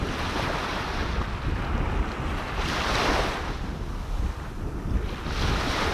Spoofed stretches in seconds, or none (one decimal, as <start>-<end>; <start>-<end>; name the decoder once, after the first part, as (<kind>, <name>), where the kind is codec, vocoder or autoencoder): none